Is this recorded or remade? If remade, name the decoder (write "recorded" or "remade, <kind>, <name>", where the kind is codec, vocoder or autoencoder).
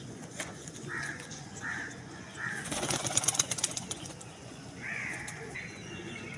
remade, vocoder, Vocos